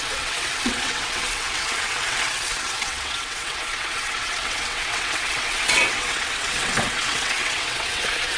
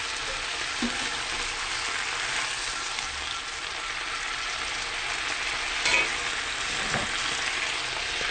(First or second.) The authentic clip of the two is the second